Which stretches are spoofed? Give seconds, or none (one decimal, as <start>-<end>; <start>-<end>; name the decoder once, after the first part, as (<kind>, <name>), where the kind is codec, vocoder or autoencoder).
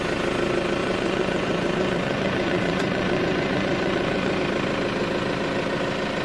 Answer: 0.8-4.4 (vocoder, Vocos)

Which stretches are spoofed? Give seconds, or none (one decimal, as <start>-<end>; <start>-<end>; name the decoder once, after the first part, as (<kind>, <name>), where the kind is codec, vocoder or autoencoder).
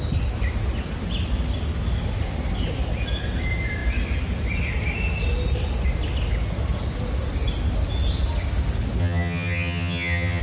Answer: 9.0-10.4 (vocoder, HiFi-GAN)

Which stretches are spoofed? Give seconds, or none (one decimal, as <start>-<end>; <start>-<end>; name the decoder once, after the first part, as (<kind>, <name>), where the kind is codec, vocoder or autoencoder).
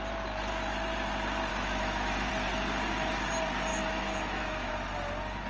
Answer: 1.5-2.3 (autoencoder, DAC-VAE); 3.7-4.7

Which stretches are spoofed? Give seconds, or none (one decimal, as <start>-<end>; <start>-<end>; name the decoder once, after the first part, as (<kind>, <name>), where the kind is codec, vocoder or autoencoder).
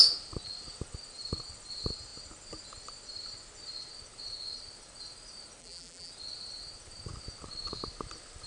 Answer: 5.6-6.1 (vocoder, BigVGAN v2)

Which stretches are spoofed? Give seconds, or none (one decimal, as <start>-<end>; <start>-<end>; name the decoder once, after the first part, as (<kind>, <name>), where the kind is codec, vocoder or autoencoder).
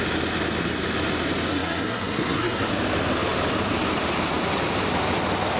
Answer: 1.5-2.7 (codec, SNAC)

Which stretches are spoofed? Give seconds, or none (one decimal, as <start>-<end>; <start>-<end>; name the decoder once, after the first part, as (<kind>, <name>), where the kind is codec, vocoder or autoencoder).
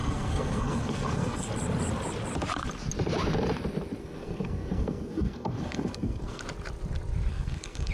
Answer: 0.0-1.5 (codec, SNAC); 4.0-6.4; 7.3-7.9